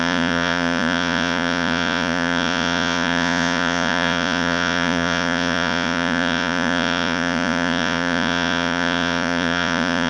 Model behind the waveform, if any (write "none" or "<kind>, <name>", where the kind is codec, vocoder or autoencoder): vocoder, Vocos